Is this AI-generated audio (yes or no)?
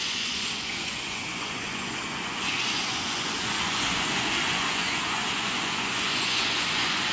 yes